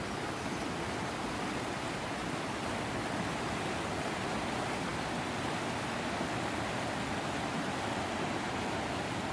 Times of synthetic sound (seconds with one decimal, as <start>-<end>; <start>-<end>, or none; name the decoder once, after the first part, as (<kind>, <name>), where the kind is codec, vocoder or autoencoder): none